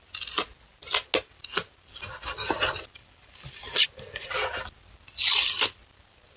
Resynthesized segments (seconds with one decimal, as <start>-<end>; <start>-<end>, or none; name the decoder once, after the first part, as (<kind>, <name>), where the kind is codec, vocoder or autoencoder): none

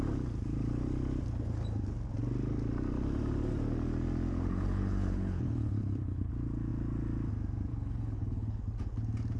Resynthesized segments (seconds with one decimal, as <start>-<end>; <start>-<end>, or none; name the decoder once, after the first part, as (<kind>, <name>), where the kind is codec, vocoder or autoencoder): 4.3-6.3 (codec, HILCodec); 7.7-8.6

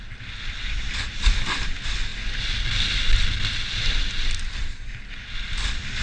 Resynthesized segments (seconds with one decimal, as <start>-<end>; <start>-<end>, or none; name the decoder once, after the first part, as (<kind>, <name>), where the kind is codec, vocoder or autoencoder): none

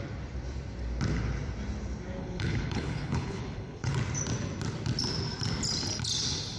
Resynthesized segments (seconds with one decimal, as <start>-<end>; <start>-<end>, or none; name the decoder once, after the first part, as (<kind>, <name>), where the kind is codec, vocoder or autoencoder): 2.2-3.9 (codec, HILCodec)

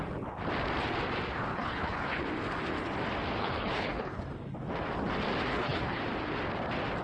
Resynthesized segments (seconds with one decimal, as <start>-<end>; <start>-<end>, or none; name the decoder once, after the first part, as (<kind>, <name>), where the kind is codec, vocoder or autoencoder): 1.5-2.2 (codec, HILCodec); 3.4-4.2; 5.5-6.0

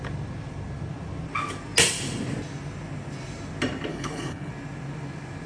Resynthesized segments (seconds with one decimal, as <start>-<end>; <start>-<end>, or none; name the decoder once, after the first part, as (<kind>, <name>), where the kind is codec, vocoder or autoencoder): 3.9-4.5 (codec, HILCodec)